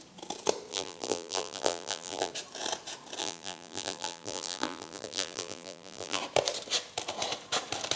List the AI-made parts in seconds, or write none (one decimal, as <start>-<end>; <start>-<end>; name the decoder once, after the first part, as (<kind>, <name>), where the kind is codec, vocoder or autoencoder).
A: 0.7-2.3 (vocoder, BigVGAN v2); 3.2-6.2